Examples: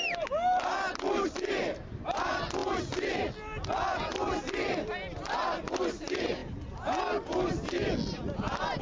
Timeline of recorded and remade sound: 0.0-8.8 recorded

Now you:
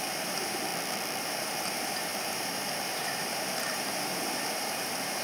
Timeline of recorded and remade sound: 0.0-0.7 remade; 0.7-1.2 recorded; 1.2-5.2 remade

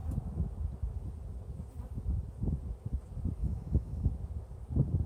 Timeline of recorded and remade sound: 0.0-3.4 recorded; 3.4-4.1 remade; 4.1-5.1 recorded

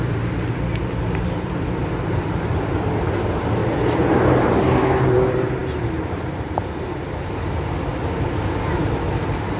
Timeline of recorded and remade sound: 0.0-3.6 remade; 3.6-5.0 recorded; 5.0-9.6 remade

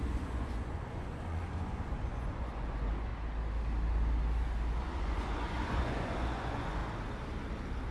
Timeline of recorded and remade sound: 0.0-3.1 remade; 3.1-4.8 recorded; 4.8-6.8 remade; 6.8-7.9 recorded

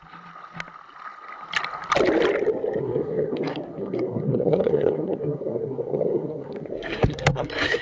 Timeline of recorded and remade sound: 0.0-2.8 recorded; 2.8-7.8 remade

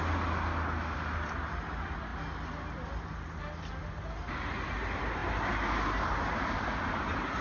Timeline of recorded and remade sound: 0.0-7.4 recorded